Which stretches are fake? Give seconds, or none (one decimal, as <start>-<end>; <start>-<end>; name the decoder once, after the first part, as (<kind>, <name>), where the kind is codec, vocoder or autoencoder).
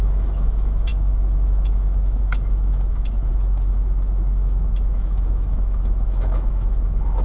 0.0-7.2 (autoencoder, DAC-VAE)